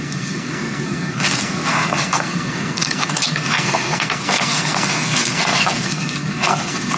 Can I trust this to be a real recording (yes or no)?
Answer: no